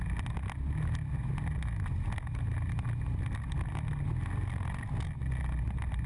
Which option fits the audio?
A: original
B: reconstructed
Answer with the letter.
A